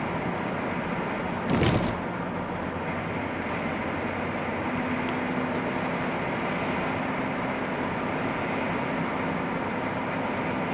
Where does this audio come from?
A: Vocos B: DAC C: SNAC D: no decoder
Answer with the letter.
D